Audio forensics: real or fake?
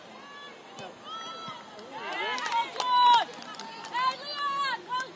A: real